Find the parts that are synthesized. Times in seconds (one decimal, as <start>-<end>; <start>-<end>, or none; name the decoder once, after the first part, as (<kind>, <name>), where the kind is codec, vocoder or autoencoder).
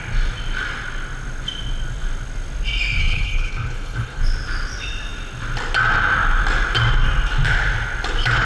3.0-4.2 (codec, HILCodec)